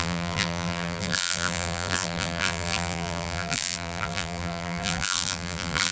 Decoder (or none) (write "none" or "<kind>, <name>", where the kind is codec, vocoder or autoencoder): vocoder, BigVGAN v2